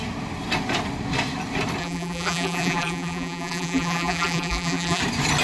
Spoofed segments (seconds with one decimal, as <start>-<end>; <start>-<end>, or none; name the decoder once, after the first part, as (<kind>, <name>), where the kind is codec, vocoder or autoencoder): 1.8-5.0 (vocoder, BigVGAN v2)